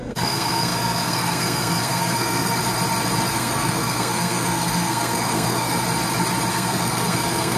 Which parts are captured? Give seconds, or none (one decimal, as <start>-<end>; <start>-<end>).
2.6-3.3; 5.8-6.5